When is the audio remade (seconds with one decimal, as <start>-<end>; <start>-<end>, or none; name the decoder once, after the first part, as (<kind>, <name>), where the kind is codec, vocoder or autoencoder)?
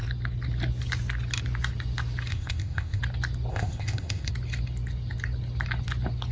2.3-3.0 (codec, ZipCodec); 3.5-4.3